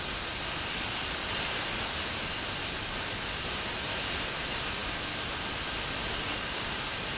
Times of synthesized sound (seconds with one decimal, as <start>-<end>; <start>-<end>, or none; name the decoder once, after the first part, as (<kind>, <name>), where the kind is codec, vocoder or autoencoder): none

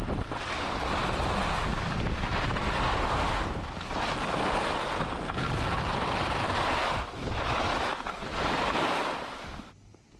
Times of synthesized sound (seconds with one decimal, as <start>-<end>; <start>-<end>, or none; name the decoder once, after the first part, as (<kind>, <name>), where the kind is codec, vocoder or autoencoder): none

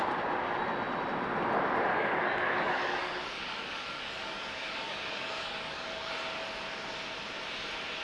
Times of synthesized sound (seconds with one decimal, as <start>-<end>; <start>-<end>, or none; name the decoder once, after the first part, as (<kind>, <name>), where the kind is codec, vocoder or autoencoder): 1.9-6.1 (codec, DAC)

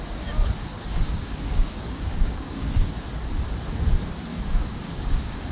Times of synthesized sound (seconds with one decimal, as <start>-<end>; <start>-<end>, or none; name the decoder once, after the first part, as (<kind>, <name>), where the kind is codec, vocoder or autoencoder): 0.7-2.9 (codec, DAC); 4.3-5.5

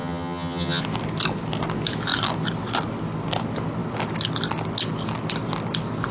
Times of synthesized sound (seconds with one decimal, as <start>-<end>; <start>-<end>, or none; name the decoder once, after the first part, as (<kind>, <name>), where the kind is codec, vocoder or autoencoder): 0.0-0.8 (vocoder, HiFi-GAN)